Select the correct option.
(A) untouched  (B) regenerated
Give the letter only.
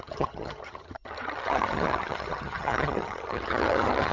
B